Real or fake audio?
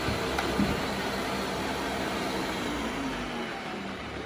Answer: fake